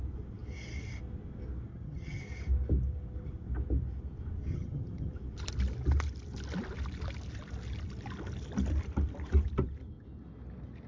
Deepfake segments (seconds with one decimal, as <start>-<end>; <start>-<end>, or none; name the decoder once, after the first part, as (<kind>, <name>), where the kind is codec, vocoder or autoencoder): 1.7-2.2 (vocoder, HiFi-GAN); 4.5-5.1